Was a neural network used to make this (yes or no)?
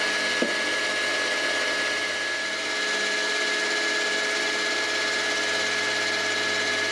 no